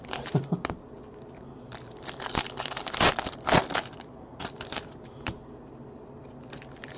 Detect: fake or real real